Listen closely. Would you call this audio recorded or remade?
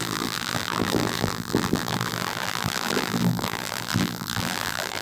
remade